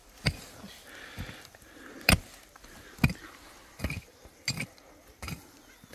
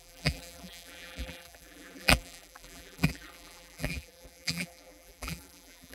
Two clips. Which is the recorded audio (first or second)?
first